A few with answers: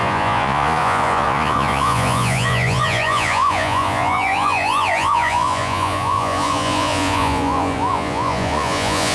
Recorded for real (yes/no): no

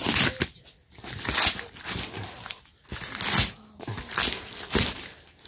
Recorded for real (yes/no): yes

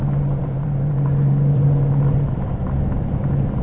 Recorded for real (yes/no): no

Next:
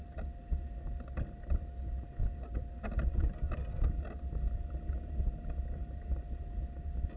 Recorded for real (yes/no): yes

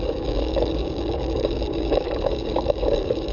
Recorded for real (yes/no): no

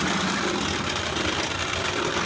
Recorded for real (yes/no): yes